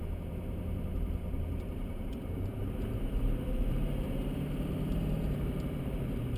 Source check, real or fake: fake